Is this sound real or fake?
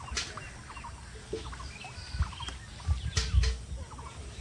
real